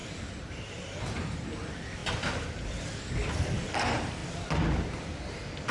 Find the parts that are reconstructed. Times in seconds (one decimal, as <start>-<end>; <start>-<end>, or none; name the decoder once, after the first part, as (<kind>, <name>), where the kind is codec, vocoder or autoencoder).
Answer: 0.6-4.2 (vocoder, BigVGAN v2)